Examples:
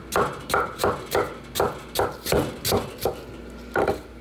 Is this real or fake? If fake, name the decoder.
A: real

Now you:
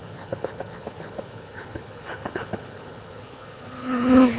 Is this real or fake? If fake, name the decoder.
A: fake, codec, HILCodec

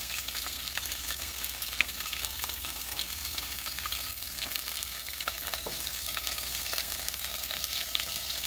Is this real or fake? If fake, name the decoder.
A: fake, codec, SNAC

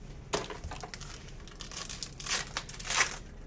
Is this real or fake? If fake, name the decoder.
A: real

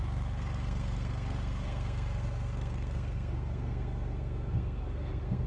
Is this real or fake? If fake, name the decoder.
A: fake, codec, SNAC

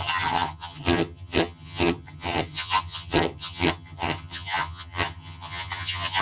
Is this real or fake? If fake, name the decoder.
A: fake, vocoder, HiFi-GAN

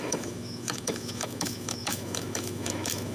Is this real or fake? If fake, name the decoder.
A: fake, autoencoder, DAC-VAE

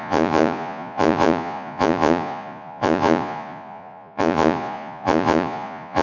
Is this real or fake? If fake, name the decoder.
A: fake, vocoder, Vocos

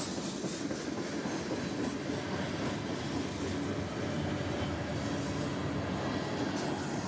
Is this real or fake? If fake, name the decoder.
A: real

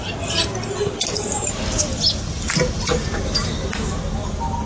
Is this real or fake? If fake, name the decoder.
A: real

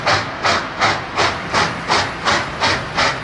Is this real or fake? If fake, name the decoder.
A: real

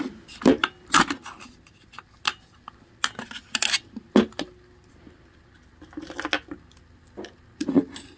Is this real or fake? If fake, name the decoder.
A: real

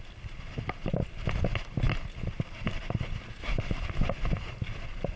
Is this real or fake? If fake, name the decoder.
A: real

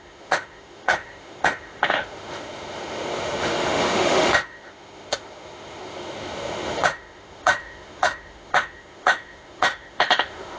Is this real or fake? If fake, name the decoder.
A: fake, autoencoder, DAC-VAE